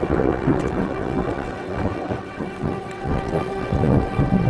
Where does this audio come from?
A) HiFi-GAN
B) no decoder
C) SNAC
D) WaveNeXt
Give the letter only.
D